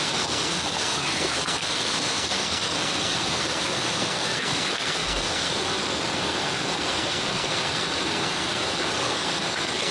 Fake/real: fake